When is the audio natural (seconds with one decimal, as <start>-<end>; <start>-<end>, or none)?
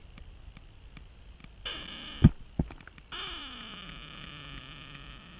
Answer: 0.0-5.4